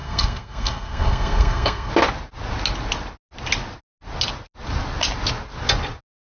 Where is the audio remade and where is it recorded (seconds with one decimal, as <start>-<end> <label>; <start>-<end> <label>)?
0.0-1.9 remade; 1.9-6.4 recorded